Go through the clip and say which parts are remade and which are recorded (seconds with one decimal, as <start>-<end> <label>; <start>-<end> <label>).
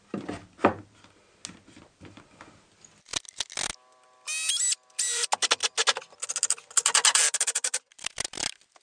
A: 0.0-8.8 recorded